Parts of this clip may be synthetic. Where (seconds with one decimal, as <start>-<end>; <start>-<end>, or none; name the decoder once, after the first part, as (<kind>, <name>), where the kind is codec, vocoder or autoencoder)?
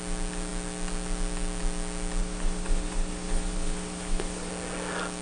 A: 2.2-4.5 (codec, HILCodec)